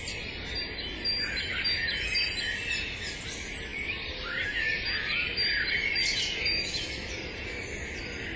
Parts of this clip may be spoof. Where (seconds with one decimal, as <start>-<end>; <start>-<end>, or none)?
none